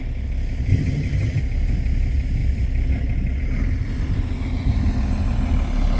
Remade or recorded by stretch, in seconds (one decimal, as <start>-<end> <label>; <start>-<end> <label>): 0.0-0.7 recorded; 0.7-1.4 remade; 1.4-6.0 recorded